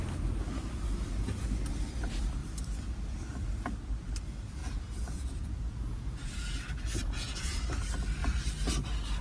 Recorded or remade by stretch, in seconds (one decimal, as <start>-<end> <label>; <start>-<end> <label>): 0.0-4.6 recorded; 4.6-7.6 remade; 7.6-9.2 recorded